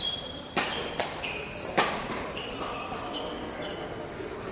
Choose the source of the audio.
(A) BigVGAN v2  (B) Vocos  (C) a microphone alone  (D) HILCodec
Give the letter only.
C